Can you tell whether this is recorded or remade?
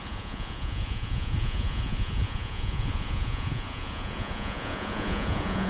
remade